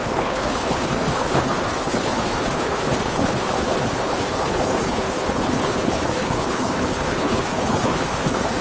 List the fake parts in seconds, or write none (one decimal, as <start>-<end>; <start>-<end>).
0.0-8.6